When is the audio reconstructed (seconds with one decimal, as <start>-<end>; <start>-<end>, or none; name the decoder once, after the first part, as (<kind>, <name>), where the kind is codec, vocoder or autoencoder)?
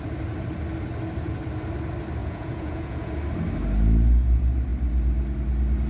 2.2-3.1 (vocoder, Vocos)